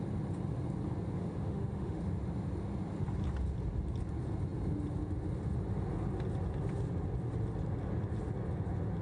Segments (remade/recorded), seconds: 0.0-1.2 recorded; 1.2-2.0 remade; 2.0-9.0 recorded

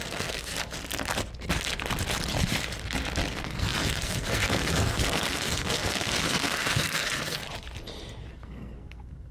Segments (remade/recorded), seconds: 0.0-0.5 remade; 0.5-3.3 recorded; 3.3-7.4 remade; 7.4-8.3 recorded; 8.3-9.3 remade

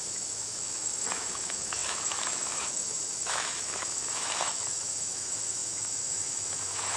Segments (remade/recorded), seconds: 0.0-7.0 remade

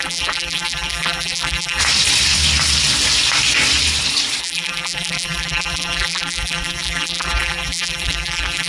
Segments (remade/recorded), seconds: 0.0-1.8 remade; 1.8-4.4 recorded; 4.4-8.7 remade

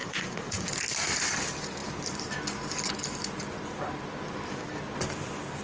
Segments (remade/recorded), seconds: 0.0-0.7 remade; 0.7-5.6 recorded

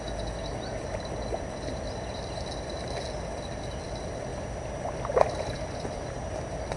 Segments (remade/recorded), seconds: 0.0-6.8 recorded

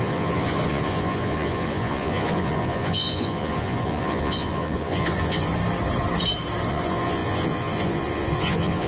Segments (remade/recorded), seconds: 0.0-5.5 remade; 5.5-6.7 recorded; 6.7-8.9 remade

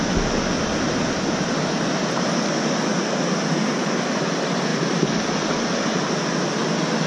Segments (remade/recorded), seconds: 0.0-7.1 recorded